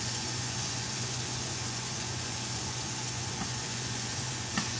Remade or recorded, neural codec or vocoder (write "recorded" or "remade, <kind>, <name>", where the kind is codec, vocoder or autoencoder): remade, vocoder, Vocos